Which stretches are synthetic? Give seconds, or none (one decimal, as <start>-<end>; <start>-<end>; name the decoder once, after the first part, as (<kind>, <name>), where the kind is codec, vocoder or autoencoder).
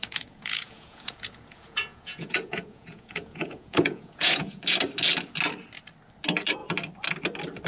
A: 0.0-4.6 (vocoder, Vocos)